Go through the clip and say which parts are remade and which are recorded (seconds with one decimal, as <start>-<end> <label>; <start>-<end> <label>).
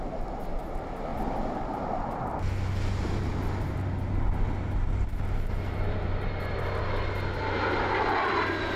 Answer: 0.0-8.8 recorded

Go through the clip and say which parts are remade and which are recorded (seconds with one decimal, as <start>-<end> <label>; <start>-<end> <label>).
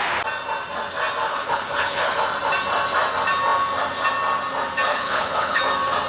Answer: 0.0-1.3 recorded; 1.3-2.2 remade; 2.2-4.9 recorded; 4.9-5.6 remade; 5.6-6.1 recorded